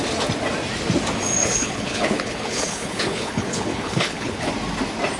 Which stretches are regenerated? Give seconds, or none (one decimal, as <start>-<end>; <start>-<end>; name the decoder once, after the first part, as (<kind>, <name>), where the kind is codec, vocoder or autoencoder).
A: 1.4-4.5 (codec, HILCodec)